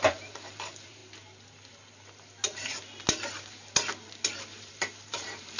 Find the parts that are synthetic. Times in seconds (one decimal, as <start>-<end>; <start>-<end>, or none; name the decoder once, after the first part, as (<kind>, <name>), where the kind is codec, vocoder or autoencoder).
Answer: 0.0-1.0 (vocoder, BigVGAN v2); 4.4-5.6

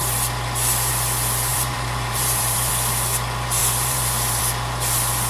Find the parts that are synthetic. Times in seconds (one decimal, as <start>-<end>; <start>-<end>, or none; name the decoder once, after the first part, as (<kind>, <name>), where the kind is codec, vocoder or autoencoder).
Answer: 1.5-2.7 (vocoder, BigVGAN v2); 3.6-4.4

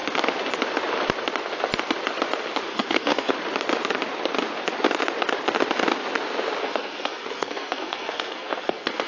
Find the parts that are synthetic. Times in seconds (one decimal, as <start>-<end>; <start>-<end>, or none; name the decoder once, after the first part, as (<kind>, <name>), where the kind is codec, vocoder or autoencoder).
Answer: 2.7-3.3 (codec, SNAC); 6.6-9.1